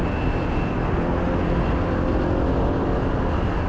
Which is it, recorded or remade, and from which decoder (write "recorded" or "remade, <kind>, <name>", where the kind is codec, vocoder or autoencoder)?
recorded